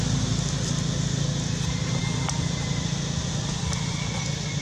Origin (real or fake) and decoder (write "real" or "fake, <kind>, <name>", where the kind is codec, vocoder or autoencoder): real